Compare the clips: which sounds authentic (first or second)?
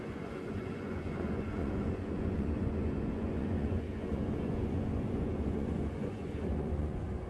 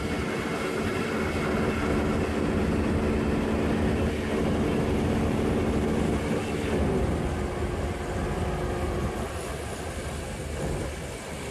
second